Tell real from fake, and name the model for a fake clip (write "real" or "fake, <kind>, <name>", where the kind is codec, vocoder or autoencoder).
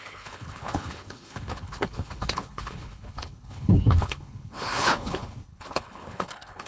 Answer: fake, codec, HILCodec